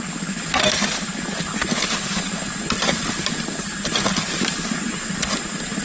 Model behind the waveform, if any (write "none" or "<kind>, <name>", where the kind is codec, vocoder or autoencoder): none